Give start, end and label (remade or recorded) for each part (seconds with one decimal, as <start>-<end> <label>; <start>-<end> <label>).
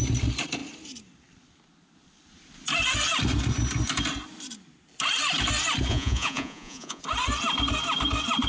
0.0-5.9 recorded; 5.9-7.0 remade; 7.0-8.5 recorded